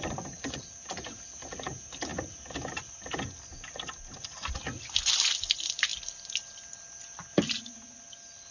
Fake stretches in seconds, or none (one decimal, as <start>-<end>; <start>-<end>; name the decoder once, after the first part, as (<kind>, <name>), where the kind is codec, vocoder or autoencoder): 5.9-7.6 (vocoder, BigVGAN v2)